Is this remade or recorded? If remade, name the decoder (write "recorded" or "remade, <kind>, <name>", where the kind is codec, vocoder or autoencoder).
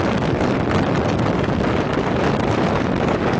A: recorded